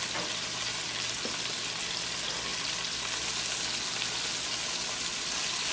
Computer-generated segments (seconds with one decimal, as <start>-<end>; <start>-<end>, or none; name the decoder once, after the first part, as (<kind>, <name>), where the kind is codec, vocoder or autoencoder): none